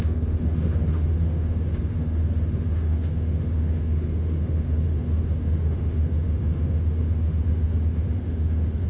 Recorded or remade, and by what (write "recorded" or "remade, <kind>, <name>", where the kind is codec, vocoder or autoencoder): remade, autoencoder, DAC-VAE